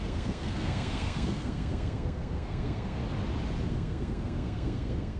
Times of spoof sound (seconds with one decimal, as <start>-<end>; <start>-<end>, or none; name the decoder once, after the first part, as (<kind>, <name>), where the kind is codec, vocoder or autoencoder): 0.0-3.0 (codec, SNAC); 3.7-5.2